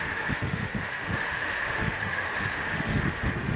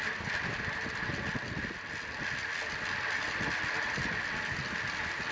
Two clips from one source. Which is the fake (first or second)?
first